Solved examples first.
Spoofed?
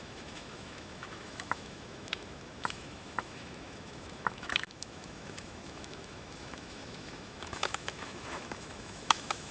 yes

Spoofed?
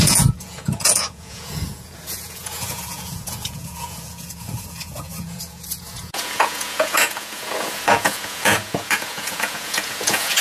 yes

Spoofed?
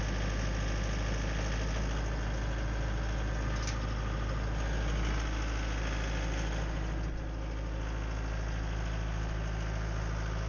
no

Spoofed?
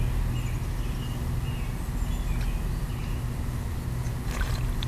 no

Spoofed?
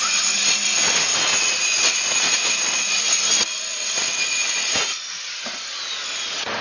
yes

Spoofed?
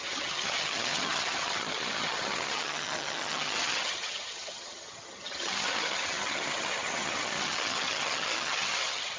yes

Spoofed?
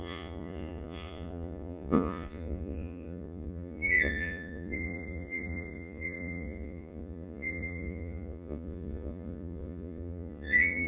yes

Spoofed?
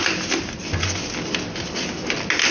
no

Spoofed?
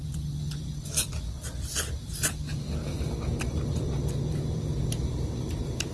no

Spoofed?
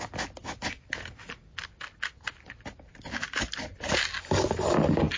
no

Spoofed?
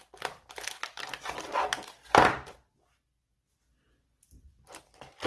no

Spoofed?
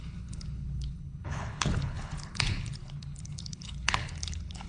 yes